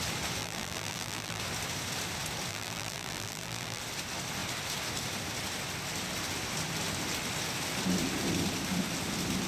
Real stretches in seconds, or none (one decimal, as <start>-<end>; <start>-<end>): 0.0-0.4; 1.4-2.5; 3.8-9.5